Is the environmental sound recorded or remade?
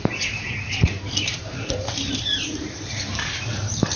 remade